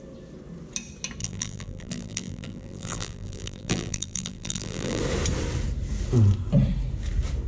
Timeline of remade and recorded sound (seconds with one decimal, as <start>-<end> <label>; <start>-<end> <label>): 0.0-1.2 recorded; 1.2-5.0 remade; 5.0-7.5 recorded